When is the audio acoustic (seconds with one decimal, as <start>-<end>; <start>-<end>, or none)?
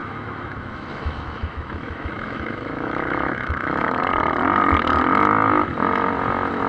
4.0-6.7